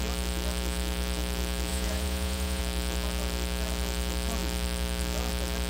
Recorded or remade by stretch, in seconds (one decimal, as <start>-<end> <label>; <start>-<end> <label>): 0.0-1.7 recorded; 1.7-2.6 remade; 2.6-5.7 recorded